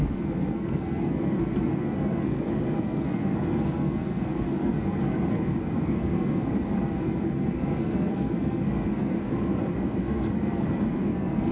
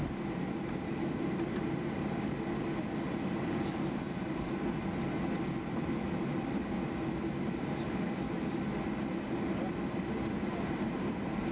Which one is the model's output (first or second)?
first